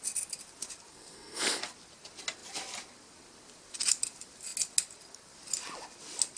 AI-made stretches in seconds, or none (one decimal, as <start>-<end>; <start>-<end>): 0.9-1.6